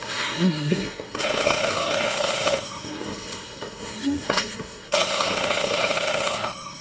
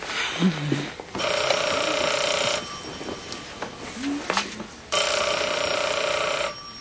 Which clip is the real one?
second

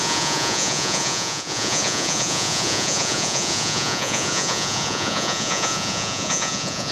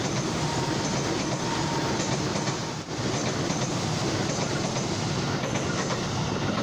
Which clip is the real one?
second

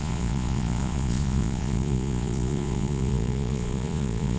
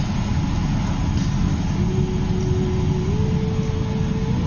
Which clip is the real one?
second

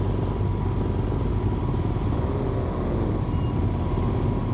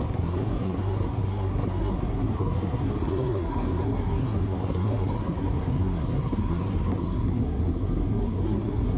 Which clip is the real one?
first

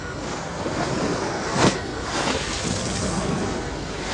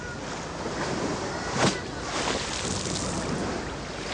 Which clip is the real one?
second